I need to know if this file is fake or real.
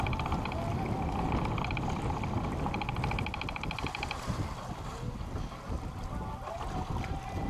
real